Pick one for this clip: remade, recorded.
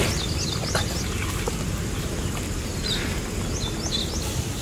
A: recorded